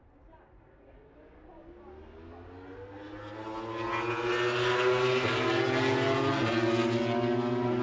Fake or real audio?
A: real